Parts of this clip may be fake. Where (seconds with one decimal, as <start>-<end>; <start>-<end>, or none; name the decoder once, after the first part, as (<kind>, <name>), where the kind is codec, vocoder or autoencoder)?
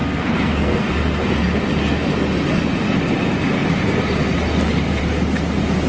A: 0.0-0.9 (codec, SNAC)